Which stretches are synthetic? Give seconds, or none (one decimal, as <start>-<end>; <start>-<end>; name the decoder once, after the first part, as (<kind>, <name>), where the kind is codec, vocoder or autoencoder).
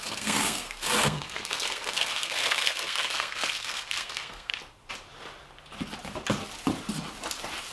0.0-4.5 (codec, SNAC)